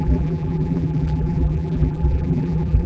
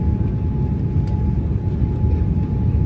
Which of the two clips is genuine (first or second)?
second